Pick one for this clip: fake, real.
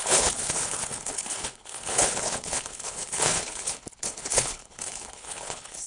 fake